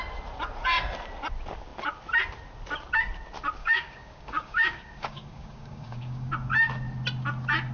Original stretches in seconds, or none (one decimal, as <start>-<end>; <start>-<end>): 0.0-3.6; 6.3-7.7